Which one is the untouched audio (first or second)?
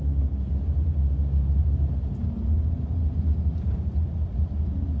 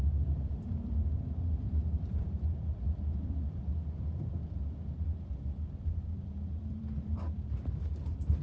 first